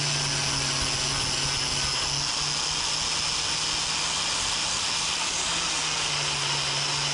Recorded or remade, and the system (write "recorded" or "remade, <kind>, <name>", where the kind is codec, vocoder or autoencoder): recorded